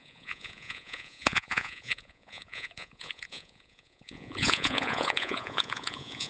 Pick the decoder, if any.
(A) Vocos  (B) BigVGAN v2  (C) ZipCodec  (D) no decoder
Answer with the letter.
A